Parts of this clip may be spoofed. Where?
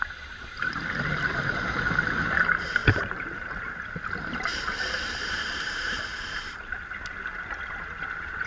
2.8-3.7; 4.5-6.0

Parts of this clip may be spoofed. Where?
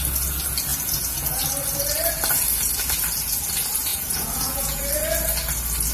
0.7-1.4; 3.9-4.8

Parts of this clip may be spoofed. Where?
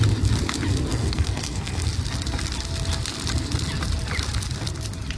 0.9-1.9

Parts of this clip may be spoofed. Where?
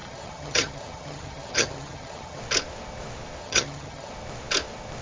0.0-2.4; 3.4-4.1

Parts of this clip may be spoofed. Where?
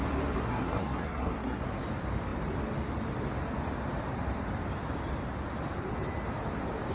0.4-1.6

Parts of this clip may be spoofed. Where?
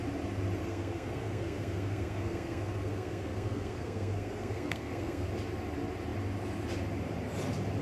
0.6-5.3